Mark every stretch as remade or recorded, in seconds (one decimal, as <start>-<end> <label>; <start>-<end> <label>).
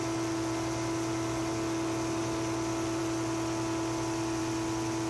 0.0-5.1 recorded